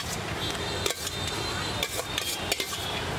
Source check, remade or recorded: recorded